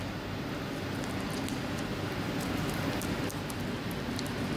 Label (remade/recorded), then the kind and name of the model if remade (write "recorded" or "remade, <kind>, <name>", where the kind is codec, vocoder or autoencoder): recorded